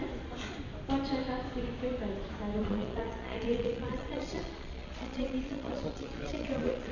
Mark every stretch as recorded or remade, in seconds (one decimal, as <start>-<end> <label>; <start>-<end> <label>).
0.0-2.6 recorded; 2.6-6.9 remade